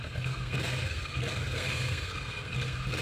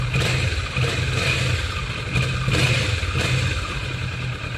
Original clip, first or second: second